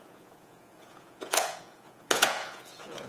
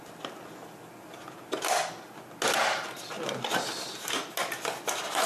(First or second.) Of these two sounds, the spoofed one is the first